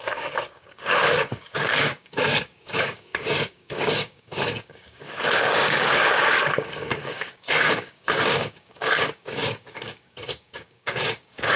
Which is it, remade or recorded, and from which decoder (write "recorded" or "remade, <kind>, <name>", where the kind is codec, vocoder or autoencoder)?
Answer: remade, codec, DAC